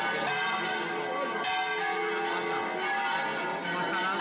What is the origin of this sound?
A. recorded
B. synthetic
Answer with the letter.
A